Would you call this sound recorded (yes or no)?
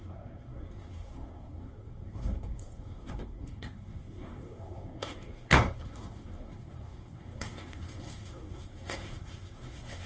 no